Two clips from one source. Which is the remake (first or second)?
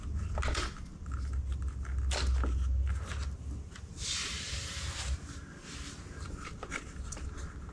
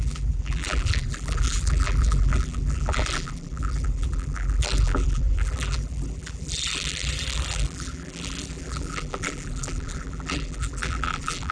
second